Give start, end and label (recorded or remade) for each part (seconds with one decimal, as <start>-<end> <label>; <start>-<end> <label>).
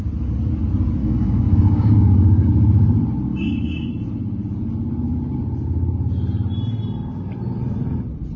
0.0-1.0 recorded; 1.0-2.5 remade; 2.5-3.3 recorded; 3.3-3.9 remade; 3.9-8.4 recorded